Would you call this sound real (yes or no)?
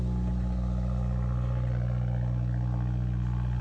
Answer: yes